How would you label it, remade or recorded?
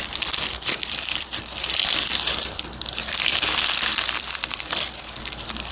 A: remade